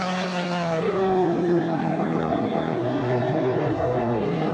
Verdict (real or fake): fake